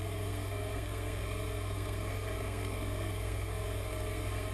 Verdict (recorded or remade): remade